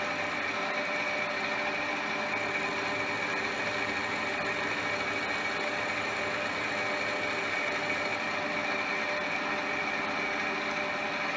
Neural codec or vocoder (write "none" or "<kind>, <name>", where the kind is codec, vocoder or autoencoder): none